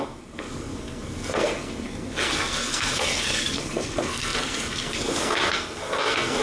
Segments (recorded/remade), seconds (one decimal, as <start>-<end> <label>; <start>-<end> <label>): 0.0-6.4 remade